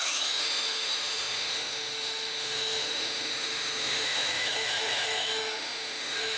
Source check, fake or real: fake